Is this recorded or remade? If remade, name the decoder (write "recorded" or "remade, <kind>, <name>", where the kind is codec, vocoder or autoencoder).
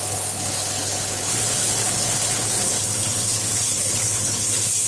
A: remade, codec, HILCodec